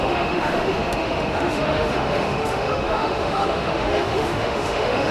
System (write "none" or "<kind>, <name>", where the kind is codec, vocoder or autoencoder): autoencoder, DAC-VAE